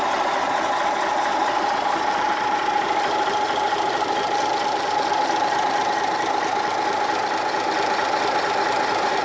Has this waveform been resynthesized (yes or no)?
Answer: no